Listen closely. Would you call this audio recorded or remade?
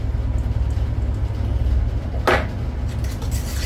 recorded